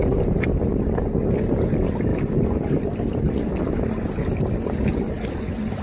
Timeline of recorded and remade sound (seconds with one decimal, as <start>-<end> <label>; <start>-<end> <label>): 0.0-5.8 recorded